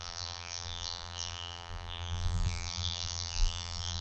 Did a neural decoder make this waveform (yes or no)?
yes